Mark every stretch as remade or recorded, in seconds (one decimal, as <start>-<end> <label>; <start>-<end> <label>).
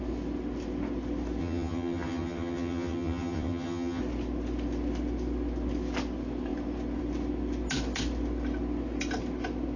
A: 0.0-1.4 recorded; 1.4-4.0 remade; 4.0-9.8 recorded